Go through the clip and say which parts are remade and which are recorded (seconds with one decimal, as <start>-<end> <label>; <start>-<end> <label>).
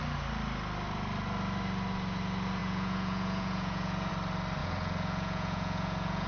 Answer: 0.0-2.6 recorded; 2.6-4.1 remade; 4.1-4.6 recorded; 4.6-6.3 remade